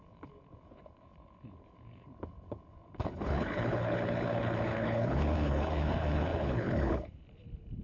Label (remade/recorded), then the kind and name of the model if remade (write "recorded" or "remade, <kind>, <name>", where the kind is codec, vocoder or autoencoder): remade, codec, HILCodec